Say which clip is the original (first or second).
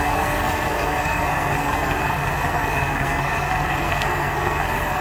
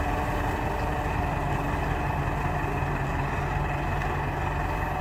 second